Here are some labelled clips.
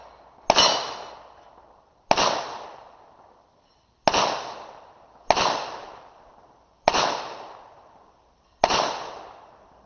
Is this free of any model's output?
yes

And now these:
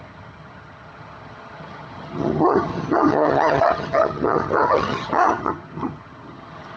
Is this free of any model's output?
no